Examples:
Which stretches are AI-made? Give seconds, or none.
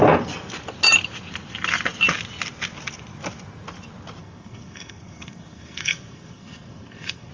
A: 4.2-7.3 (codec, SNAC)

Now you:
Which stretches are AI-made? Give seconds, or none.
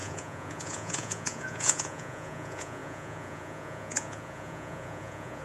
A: 0.0-5.4 (vocoder, Vocos)